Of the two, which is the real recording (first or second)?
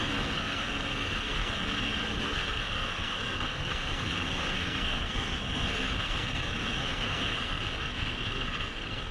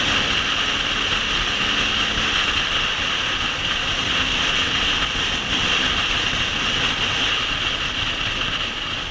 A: second